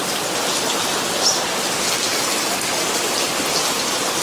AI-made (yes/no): no